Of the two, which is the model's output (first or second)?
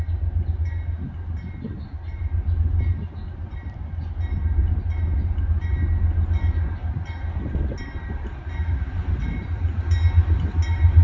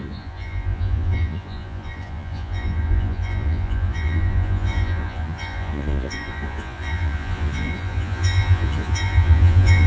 second